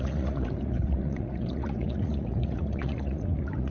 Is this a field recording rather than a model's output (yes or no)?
no